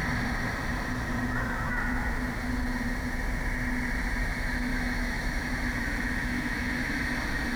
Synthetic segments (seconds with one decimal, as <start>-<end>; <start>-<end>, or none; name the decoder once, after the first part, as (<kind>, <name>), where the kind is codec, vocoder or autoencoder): 4.7-5.6 (autoencoder, DAC-VAE); 6.2-6.9